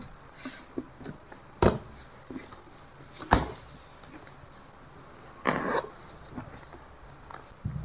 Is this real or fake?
real